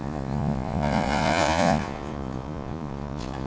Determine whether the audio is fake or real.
fake